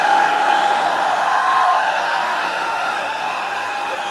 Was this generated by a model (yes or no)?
yes